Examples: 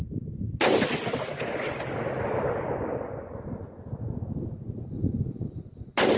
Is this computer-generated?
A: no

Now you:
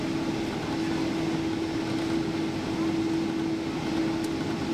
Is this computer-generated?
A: no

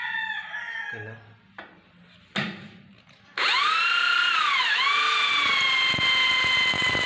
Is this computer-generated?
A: no